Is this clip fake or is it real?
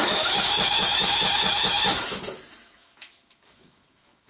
fake